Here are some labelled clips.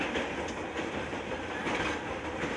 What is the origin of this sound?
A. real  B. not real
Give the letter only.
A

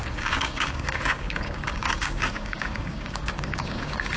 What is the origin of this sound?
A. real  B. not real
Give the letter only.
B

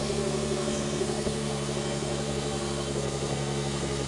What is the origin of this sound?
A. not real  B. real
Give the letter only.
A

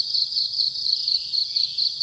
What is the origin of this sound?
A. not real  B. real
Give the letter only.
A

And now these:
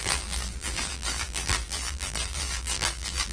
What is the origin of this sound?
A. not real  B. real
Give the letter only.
A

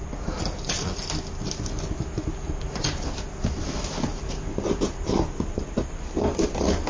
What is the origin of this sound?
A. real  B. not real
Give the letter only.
A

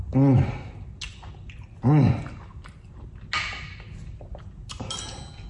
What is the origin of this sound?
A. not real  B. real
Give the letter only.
B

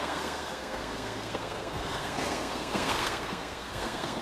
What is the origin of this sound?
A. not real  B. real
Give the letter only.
A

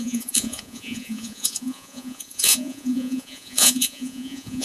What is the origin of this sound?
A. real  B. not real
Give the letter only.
B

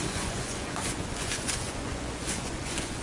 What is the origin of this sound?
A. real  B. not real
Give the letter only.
B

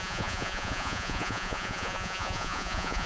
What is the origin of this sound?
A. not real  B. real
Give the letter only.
A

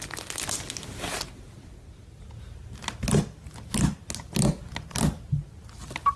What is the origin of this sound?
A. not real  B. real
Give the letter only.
B